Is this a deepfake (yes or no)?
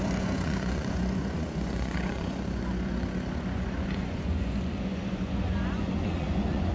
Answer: yes